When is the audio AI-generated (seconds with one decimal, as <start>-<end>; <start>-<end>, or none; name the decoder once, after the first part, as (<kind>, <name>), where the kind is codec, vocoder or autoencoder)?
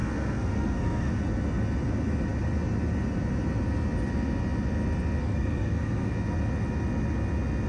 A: 0.0-1.1 (codec, SNAC); 5.2-6.1